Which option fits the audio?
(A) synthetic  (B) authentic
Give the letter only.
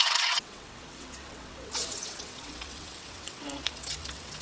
A